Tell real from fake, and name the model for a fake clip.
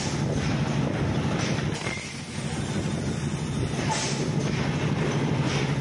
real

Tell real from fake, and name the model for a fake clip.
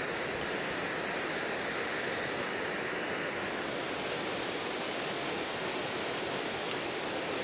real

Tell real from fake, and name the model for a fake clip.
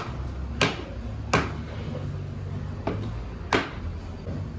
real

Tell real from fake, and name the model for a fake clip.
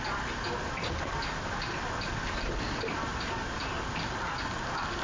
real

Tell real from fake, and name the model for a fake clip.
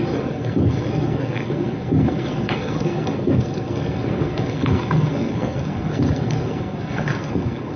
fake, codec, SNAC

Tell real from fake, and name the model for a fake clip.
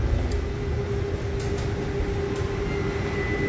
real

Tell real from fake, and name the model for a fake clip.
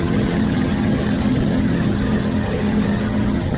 fake, vocoder, HiFi-GAN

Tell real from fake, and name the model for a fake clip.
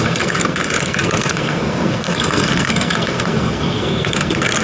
fake, codec, SNAC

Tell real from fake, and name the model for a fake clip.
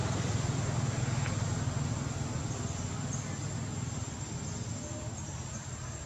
real